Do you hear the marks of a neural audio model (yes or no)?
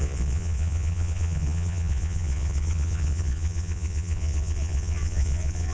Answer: yes